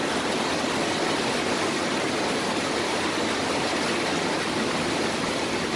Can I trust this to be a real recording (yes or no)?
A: yes